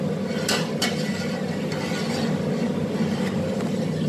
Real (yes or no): yes